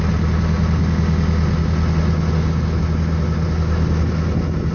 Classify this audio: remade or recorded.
recorded